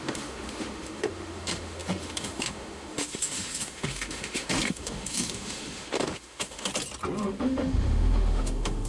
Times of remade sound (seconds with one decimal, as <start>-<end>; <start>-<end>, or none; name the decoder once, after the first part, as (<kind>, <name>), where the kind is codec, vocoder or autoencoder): 0.0-6.7 (autoencoder, DAC-VAE); 7.2-8.9